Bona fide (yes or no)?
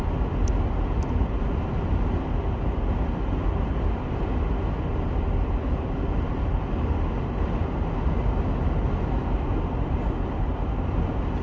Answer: yes